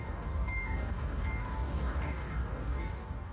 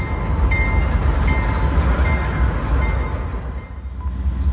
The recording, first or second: second